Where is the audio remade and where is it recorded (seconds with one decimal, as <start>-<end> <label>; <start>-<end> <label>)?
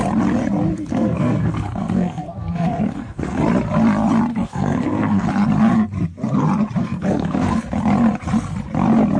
0.0-0.9 recorded; 0.9-3.4 remade; 3.4-4.3 recorded; 4.3-5.3 remade; 5.3-6.8 recorded; 6.8-7.6 remade; 7.6-9.2 recorded